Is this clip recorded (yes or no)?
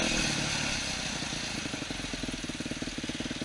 yes